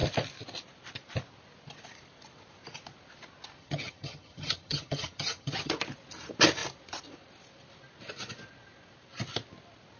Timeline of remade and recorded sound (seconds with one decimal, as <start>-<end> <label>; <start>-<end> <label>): 0.0-3.6 recorded; 3.6-5.7 remade; 5.7-10.0 recorded